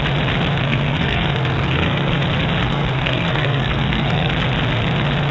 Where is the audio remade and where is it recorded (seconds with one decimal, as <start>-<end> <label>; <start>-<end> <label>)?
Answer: 0.0-0.6 recorded; 0.6-2.2 remade; 2.2-2.6 recorded; 2.6-4.3 remade; 4.3-5.3 recorded